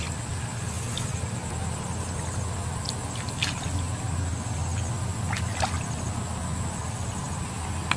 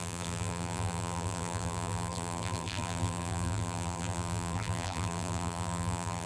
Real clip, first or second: first